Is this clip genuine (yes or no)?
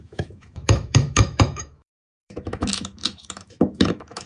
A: no